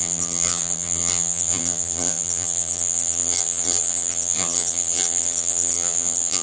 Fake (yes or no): yes